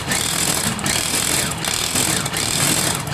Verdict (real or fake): real